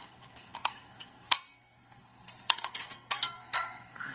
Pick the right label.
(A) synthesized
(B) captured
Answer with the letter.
A